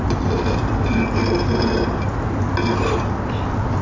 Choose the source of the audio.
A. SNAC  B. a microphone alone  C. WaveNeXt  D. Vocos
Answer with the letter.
B